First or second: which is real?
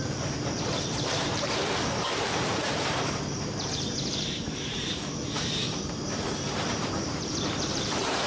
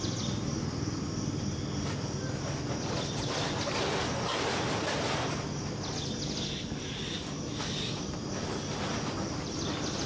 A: second